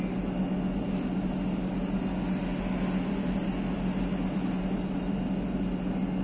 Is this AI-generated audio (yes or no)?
no